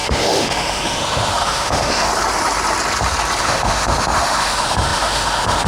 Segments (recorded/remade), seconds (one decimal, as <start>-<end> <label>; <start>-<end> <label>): 0.0-2.1 remade; 2.1-3.4 recorded; 3.4-5.7 remade

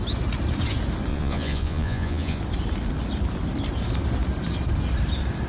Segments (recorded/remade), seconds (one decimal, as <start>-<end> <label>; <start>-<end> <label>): 0.0-1.1 recorded; 1.1-2.4 remade; 2.4-5.5 recorded